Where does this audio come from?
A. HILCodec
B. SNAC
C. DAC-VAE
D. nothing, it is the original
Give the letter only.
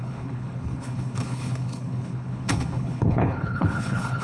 A